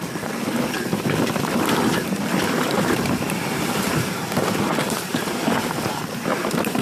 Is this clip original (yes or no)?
no